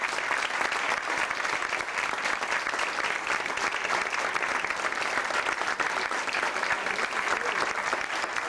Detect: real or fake real